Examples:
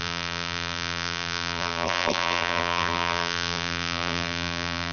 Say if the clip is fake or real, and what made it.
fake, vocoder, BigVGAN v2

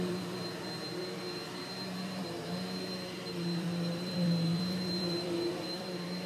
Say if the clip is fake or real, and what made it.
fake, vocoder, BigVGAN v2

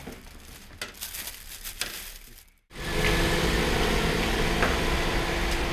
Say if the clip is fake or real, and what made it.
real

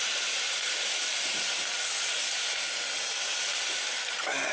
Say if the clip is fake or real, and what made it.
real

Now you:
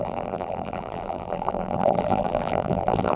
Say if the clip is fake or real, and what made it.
fake, vocoder, BigVGAN v2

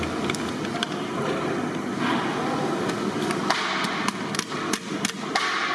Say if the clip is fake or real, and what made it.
real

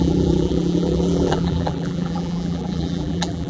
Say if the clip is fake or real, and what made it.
fake, vocoder, BigVGAN v2